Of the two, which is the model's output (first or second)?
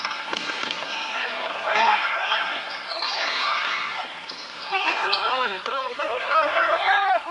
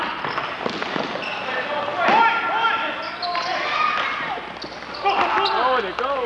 first